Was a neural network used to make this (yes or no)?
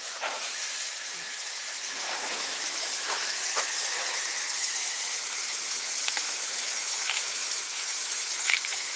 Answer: yes